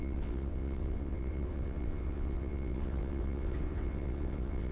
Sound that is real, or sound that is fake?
fake